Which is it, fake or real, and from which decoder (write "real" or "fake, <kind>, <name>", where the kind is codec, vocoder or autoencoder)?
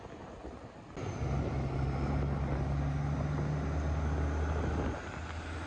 real